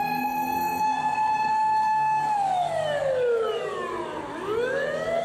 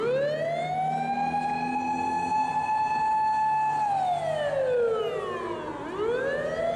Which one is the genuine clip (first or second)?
second